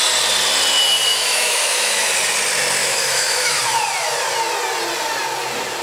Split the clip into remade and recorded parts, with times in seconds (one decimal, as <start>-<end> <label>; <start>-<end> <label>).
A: 0.0-1.1 recorded; 1.1-2.1 remade; 2.1-2.8 recorded; 2.8-3.6 remade; 3.6-5.8 recorded